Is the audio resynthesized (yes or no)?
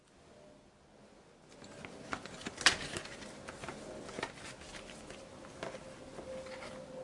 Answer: no